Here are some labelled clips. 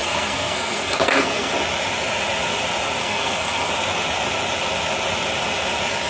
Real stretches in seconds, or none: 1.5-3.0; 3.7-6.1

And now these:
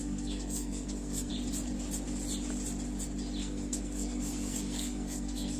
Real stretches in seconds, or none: 1.3-3.4

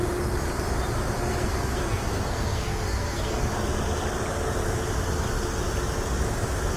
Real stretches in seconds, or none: 0.0-1.3; 3.4-6.8

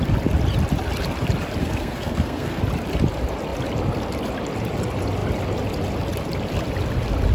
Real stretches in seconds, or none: 0.0-1.6; 2.6-7.3

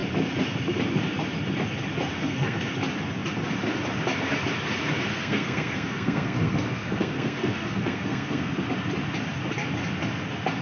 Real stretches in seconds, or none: 0.0-2.1; 2.7-5.1; 8.5-10.6

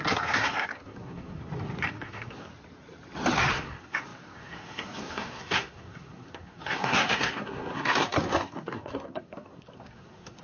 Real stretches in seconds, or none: 1.4-1.9; 2.5-3.5

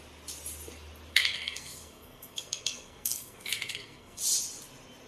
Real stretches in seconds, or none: 0.0-1.1; 4.2-5.1

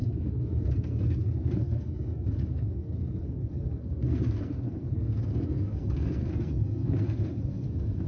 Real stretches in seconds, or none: none